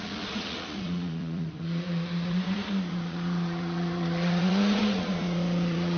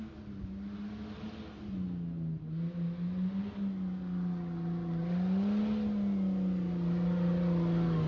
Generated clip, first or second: first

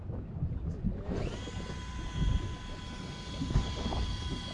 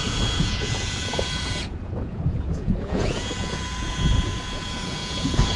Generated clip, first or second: second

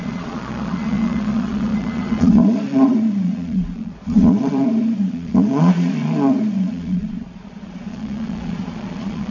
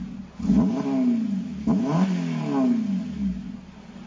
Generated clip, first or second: first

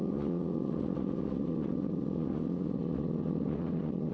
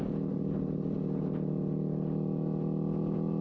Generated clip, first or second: first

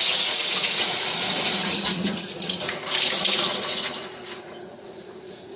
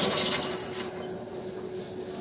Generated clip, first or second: first